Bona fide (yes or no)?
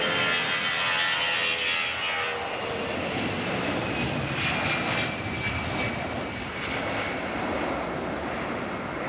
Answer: yes